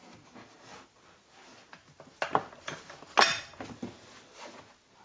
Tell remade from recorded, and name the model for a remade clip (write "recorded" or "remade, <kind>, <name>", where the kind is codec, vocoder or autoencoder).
recorded